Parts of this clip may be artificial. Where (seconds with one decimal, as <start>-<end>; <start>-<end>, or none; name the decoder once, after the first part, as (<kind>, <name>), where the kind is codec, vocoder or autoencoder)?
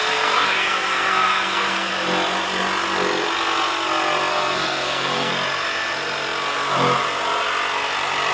0.0-1.9 (codec, SNAC); 4.3-5.3